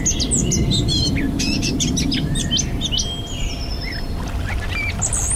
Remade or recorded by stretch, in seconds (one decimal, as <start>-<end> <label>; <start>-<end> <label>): 0.0-5.4 recorded